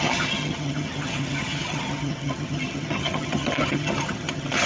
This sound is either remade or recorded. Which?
remade